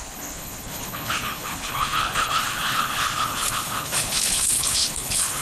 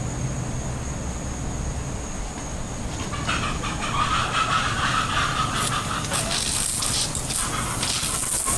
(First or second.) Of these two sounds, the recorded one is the second